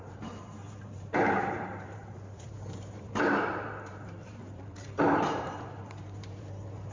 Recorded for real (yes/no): no